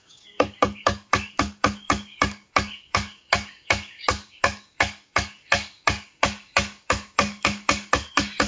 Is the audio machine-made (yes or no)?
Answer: yes